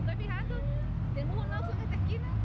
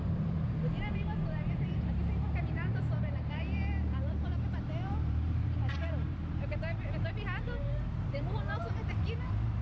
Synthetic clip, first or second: second